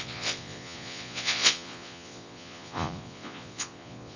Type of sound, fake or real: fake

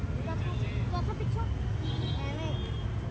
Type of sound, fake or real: real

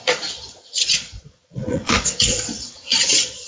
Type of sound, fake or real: fake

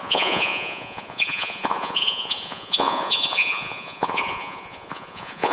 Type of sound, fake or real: fake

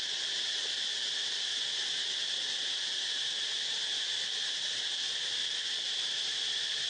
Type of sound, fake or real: real